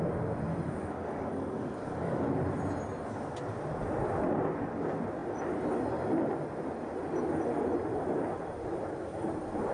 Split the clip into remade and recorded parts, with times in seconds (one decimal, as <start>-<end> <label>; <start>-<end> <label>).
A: 0.0-0.8 recorded; 0.8-2.2 remade; 2.2-9.7 recorded